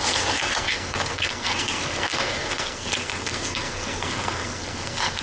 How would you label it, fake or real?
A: fake